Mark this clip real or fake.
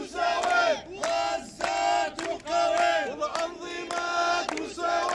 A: real